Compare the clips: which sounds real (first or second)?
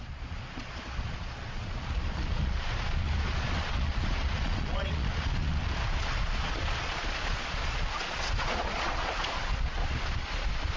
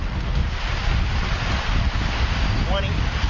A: second